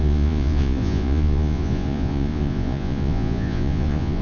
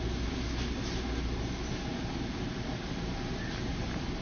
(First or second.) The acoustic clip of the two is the second